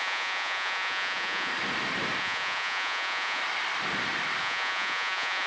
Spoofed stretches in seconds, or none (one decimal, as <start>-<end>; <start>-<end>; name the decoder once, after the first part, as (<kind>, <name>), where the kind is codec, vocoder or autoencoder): 0.0-1.5 (vocoder, Vocos); 2.2-3.4; 4.4-5.5